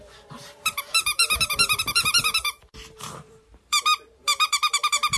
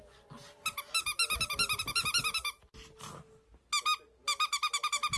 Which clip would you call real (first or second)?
second